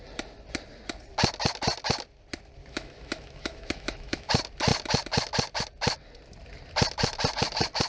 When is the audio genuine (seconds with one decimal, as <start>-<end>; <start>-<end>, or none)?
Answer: 0.0-2.6; 4.3-7.9

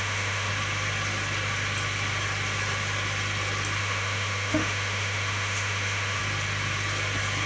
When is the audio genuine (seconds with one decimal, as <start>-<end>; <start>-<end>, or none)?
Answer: 0.5-3.8; 6.2-7.5